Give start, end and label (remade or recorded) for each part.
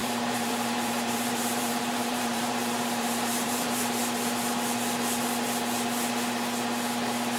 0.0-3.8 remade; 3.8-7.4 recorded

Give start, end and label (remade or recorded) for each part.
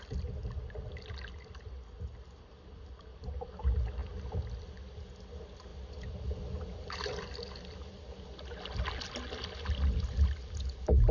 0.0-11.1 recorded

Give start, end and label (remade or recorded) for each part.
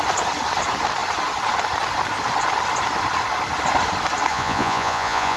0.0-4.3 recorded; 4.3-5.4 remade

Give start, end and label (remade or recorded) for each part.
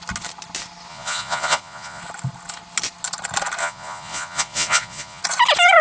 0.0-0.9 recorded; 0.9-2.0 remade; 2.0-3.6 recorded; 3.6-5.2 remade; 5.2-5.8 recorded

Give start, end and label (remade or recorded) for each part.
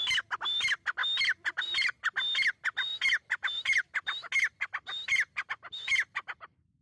0.0-2.9 recorded; 2.9-4.3 remade; 4.3-6.8 recorded